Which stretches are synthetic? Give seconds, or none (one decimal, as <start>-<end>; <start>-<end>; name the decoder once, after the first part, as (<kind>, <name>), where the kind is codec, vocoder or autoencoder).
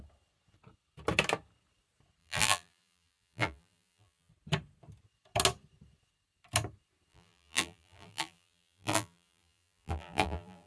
2.2-4.3 (vocoder, BigVGAN v2); 7.1-10.7